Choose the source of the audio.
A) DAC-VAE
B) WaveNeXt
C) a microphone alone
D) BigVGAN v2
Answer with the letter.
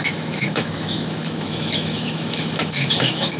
A